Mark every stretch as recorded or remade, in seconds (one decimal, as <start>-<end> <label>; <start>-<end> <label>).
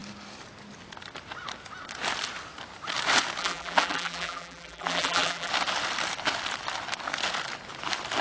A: 0.0-3.4 recorded; 3.4-5.5 remade; 5.5-8.2 recorded